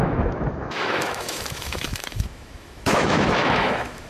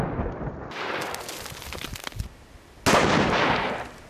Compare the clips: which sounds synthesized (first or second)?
first